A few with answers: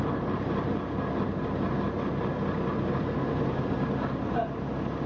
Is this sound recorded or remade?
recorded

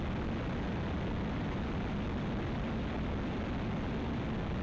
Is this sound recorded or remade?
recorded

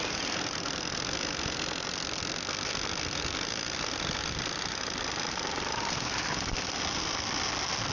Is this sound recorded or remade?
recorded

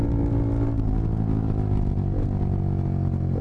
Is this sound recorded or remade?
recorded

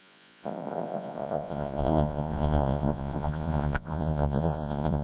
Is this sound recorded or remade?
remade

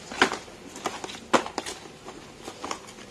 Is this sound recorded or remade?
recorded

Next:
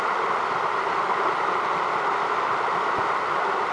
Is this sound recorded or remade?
recorded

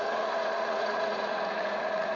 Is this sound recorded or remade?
remade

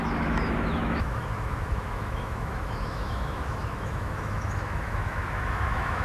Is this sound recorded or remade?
remade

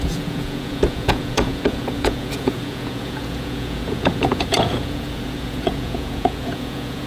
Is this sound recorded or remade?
remade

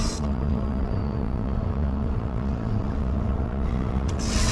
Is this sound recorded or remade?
remade